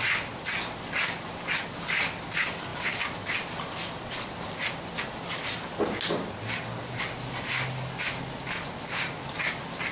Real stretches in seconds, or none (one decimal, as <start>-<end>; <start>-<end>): 0.0-9.9